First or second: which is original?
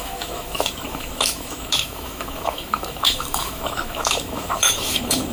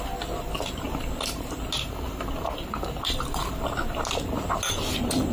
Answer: second